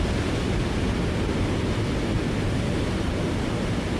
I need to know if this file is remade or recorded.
recorded